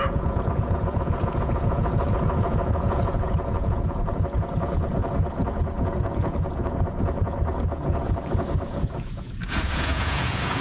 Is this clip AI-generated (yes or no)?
yes